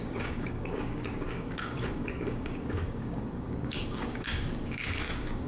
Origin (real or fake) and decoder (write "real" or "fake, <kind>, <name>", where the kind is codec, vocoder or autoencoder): fake, codec, DAC